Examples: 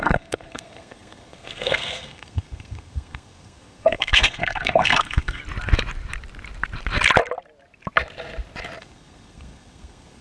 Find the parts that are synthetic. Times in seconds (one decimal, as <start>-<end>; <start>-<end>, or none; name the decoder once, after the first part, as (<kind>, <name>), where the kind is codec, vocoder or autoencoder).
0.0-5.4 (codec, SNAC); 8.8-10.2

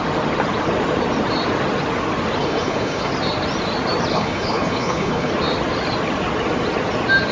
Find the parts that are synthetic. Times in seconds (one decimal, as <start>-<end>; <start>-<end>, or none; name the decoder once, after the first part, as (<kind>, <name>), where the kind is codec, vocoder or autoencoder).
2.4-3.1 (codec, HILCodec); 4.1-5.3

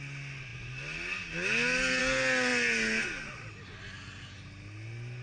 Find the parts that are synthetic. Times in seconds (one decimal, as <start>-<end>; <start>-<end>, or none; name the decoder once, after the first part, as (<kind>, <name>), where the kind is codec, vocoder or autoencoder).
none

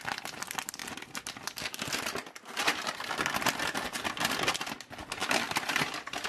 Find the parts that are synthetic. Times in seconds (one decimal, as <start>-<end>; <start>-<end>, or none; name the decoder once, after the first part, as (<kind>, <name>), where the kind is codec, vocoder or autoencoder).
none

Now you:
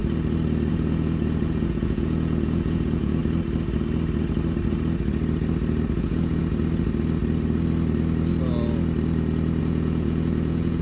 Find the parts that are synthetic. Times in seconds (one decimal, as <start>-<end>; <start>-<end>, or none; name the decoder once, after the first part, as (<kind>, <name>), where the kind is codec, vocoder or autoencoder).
0.7-3.2 (vocoder, Vocos); 6.0-6.4; 9.6-10.8

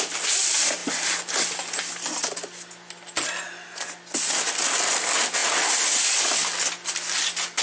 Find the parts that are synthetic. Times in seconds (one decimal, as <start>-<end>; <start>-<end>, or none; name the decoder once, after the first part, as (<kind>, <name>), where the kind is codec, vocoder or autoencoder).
none

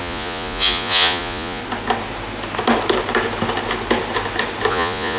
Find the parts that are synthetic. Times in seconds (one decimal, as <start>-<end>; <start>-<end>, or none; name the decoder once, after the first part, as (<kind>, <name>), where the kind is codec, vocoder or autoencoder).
0.0-1.6 (vocoder, Vocos); 4.7-5.2

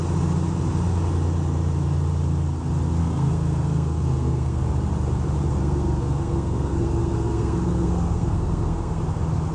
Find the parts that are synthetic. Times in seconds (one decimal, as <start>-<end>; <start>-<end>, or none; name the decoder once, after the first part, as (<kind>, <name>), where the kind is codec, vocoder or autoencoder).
3.0-4.7 (codec, SNAC); 5.5-9.0